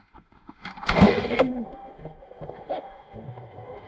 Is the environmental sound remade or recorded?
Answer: remade